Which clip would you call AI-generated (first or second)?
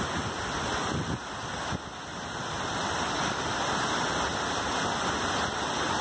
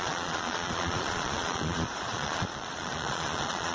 second